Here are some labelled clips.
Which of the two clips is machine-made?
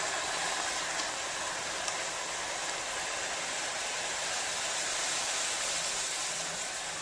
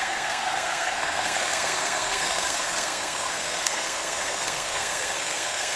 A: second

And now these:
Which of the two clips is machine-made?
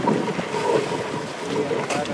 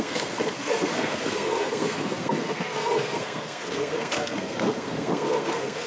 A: second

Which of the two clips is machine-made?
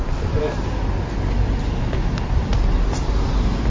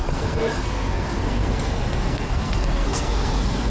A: second